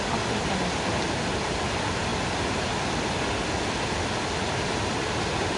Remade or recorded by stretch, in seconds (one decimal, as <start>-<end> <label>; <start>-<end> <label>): 0.0-5.6 recorded